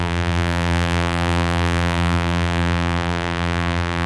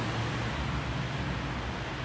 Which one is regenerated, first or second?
first